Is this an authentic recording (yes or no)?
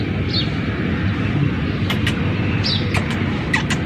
yes